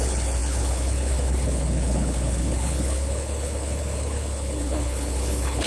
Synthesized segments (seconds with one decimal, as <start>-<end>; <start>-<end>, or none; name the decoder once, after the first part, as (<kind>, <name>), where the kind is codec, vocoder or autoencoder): 0.0-5.7 (codec, HILCodec)